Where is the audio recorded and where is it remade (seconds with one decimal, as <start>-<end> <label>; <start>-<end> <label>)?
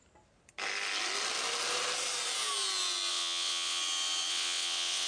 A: 0.0-3.1 recorded; 3.1-3.8 remade; 3.8-4.3 recorded; 4.3-5.1 remade